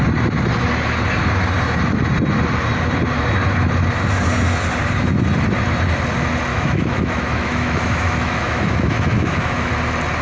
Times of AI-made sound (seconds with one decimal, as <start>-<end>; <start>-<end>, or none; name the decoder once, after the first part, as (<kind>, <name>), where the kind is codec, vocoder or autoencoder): 6.5-9.7 (autoencoder, DAC-VAE)